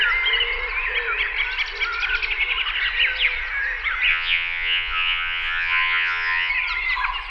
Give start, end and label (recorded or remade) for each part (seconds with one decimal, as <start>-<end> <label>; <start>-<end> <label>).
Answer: 0.0-4.1 recorded; 4.1-6.5 remade; 6.5-7.3 recorded

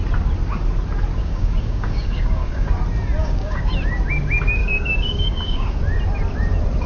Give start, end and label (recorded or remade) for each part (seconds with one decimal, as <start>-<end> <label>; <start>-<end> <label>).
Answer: 0.0-1.2 recorded; 1.2-2.7 remade; 2.7-3.2 recorded; 3.2-3.7 remade; 3.7-4.6 recorded; 4.6-5.8 remade; 5.8-6.9 recorded

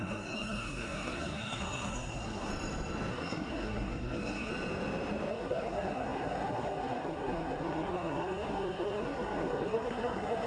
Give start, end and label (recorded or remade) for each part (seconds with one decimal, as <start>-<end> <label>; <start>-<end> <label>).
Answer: 0.0-2.5 remade; 2.5-3.1 recorded; 3.1-4.5 remade; 4.5-5.3 recorded; 5.3-10.5 remade

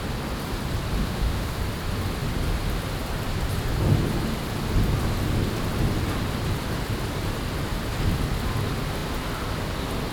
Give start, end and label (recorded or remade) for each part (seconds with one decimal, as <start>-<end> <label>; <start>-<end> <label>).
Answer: 0.0-1.0 recorded; 1.0-1.6 remade; 1.6-10.1 recorded

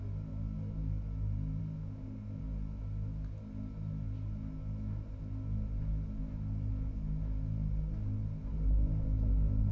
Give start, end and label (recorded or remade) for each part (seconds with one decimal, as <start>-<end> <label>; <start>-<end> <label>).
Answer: 0.0-1.6 recorded; 1.6-2.4 remade; 2.4-9.7 recorded

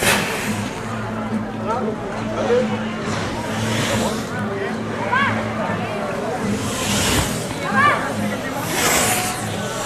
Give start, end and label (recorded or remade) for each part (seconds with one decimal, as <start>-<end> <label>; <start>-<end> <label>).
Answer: 0.0-3.2 recorded; 3.2-4.1 remade; 4.1-9.9 recorded